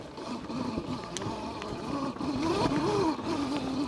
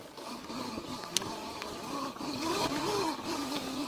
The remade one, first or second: second